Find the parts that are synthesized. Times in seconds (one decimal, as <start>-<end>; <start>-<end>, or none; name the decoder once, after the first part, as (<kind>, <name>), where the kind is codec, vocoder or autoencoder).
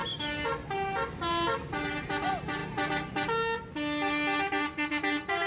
none